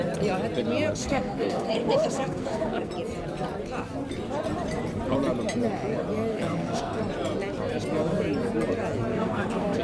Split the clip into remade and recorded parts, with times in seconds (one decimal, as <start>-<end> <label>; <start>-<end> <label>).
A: 0.0-1.0 recorded; 1.0-2.9 remade; 2.9-6.3 recorded; 6.3-7.0 remade; 7.0-9.1 recorded; 9.1-9.8 remade